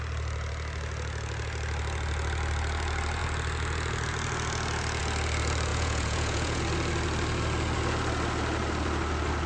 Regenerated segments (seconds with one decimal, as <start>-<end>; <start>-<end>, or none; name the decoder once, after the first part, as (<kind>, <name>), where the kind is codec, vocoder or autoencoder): 5.7-6.6 (vocoder, Vocos)